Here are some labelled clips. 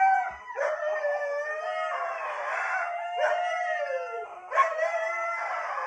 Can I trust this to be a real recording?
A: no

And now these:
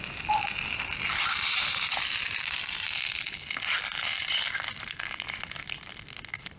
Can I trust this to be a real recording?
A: yes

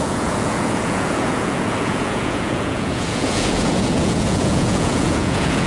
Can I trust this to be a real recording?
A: no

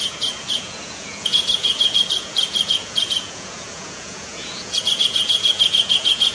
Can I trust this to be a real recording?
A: no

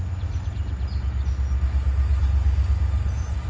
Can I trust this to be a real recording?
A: yes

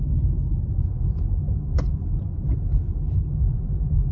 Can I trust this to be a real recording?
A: yes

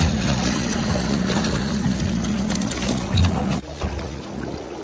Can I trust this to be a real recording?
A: no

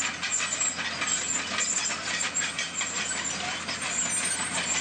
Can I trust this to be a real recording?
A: yes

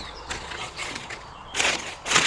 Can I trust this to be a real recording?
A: no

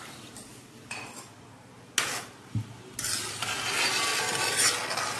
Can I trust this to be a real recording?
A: yes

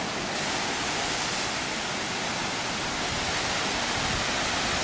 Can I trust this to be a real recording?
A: yes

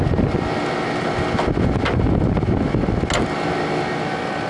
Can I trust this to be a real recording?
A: yes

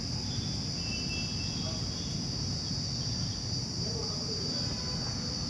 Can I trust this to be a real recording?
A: yes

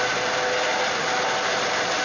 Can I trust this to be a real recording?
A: yes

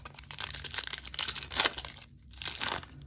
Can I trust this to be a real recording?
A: yes